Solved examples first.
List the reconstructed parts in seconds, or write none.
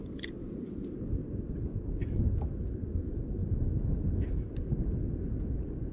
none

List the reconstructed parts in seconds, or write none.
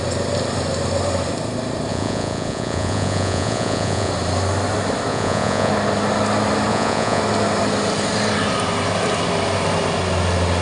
1.9-4.1 (vocoder, Vocos); 5.1-5.7; 6.7-7.2